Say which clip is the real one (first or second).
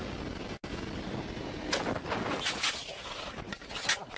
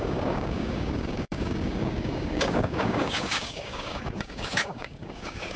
first